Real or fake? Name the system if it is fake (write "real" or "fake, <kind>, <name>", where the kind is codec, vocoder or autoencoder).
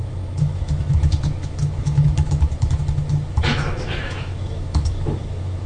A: fake, autoencoder, DAC-VAE